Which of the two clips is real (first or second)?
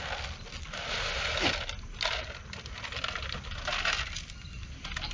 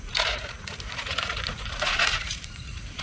first